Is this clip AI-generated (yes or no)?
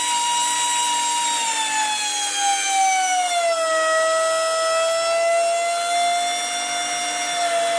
no